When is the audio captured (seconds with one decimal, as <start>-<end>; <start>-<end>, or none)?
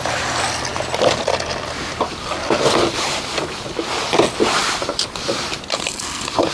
0.0-5.7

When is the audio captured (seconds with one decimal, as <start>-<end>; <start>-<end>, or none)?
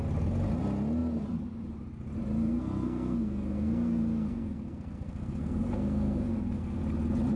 0.0-2.4; 6.8-7.4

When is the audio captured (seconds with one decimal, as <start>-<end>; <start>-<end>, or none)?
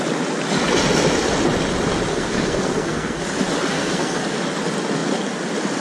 0.0-2.1; 3.2-3.7; 4.2-5.8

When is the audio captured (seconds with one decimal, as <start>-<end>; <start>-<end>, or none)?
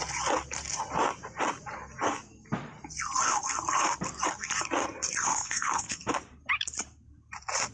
0.0-5.3; 6.0-7.7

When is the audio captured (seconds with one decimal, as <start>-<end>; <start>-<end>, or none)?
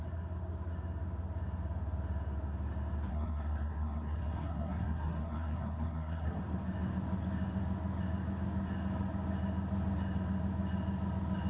0.0-3.1; 6.4-11.5